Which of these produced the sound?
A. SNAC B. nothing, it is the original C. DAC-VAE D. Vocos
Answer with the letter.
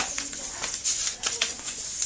D